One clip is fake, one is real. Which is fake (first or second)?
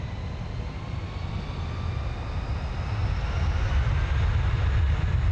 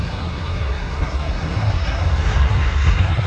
second